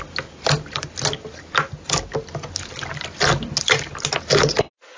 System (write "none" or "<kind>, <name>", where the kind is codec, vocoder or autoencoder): none